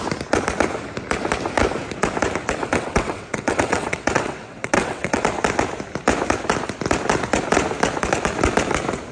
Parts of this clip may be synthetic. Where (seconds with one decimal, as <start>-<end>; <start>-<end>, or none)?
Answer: 2.7-5.2